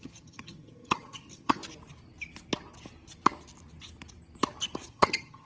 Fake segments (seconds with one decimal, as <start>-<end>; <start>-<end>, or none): 0.0-1.6; 4.9-5.5